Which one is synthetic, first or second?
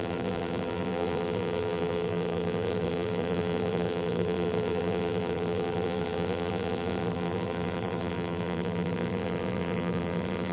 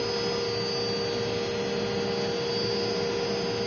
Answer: first